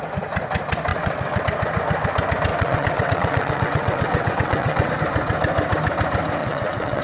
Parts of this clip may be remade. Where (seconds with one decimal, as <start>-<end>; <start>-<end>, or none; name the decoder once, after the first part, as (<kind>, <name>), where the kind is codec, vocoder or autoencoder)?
0.9-1.4 (vocoder, WaveNeXt); 2.5-4.9; 6.4-7.0